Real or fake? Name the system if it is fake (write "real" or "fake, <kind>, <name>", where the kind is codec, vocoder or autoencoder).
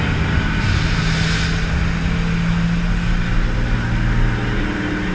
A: real